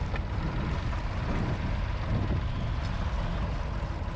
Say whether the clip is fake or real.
real